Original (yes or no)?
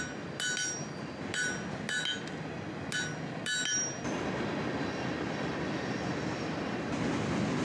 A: yes